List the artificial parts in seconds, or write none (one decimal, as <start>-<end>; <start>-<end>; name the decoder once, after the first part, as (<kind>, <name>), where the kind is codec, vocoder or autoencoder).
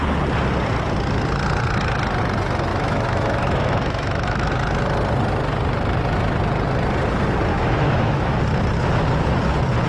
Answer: 2.7-4.5 (autoencoder, DAC-VAE); 7.5-8.4